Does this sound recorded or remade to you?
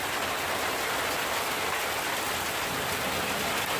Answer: recorded